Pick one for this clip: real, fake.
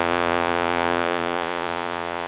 fake